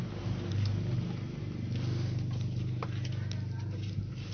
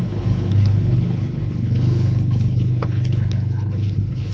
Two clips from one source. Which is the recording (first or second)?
first